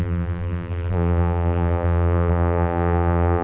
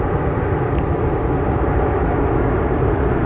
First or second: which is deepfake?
first